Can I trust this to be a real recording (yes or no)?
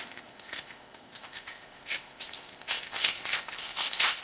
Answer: no